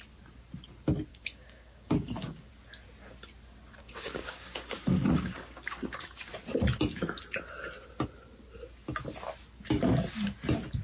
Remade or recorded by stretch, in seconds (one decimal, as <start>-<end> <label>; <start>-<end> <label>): 0.0-1.1 recorded; 1.1-2.5 remade; 2.5-3.8 recorded; 3.8-6.3 remade; 6.3-10.8 recorded